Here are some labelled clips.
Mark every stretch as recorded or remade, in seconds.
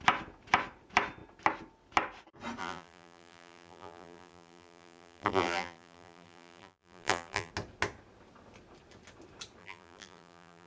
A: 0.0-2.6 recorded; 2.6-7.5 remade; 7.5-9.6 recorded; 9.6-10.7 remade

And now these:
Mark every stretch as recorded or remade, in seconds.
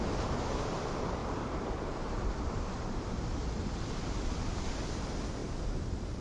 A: 0.0-1.2 recorded; 1.2-3.6 remade; 3.6-5.4 recorded; 5.4-6.2 remade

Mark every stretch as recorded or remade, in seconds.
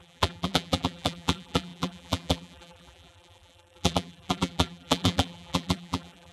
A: 0.0-6.3 remade